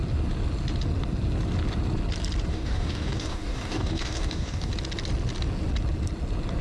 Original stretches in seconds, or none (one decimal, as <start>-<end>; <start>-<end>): 0.0-2.5; 4.7-6.6